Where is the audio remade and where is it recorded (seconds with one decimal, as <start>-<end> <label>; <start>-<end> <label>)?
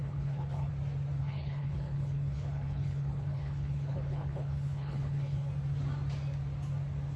0.0-0.7 remade; 0.7-1.2 recorded; 1.2-5.5 remade; 5.5-7.2 recorded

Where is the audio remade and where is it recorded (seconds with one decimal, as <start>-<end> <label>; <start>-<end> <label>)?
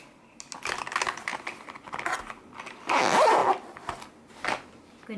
0.0-5.2 recorded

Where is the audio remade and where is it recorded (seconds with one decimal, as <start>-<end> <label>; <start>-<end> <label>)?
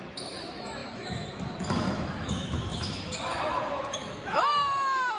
0.0-5.2 remade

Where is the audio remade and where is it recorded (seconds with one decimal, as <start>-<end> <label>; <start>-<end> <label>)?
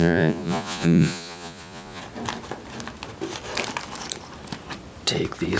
0.0-2.0 remade; 2.0-5.6 recorded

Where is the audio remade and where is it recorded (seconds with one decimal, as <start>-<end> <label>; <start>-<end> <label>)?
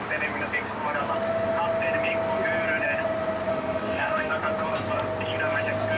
0.0-3.5 recorded; 3.5-4.3 remade; 4.3-6.0 recorded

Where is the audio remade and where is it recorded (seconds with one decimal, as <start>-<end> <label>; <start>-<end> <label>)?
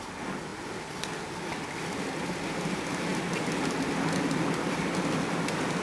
0.0-5.8 recorded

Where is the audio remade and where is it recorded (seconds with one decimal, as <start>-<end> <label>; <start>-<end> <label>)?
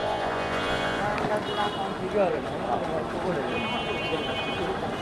0.0-1.0 remade; 1.0-5.0 recorded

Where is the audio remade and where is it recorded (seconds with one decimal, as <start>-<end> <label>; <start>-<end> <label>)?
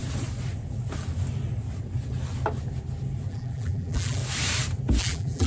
0.0-3.3 recorded; 3.3-4.2 remade; 4.2-5.0 recorded; 5.0-5.5 remade